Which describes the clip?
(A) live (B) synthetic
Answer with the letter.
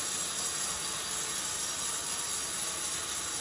A